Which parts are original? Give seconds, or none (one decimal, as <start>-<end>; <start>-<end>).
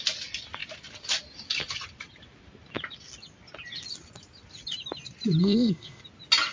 0.0-5.4; 6.0-6.5